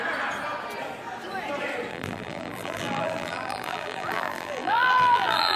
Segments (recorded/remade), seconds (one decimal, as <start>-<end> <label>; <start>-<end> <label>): 0.0-1.9 recorded; 1.9-5.6 remade